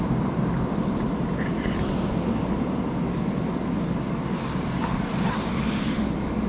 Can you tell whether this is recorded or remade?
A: recorded